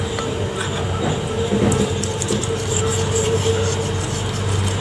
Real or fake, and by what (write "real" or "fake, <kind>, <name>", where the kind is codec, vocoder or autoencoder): real